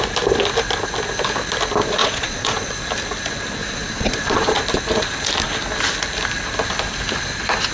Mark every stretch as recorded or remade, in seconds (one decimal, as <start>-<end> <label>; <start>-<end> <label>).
0.0-2.0 recorded; 2.0-2.7 remade; 2.7-3.6 recorded; 3.6-4.6 remade; 4.6-7.7 recorded